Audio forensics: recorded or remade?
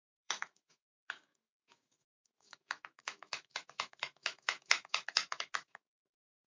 remade